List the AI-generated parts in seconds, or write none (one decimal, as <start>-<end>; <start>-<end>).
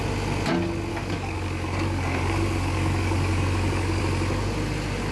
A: 0.9-4.0